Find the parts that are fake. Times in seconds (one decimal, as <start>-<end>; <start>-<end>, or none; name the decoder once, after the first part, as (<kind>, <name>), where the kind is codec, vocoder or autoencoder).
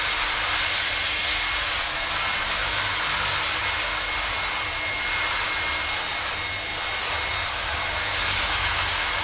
none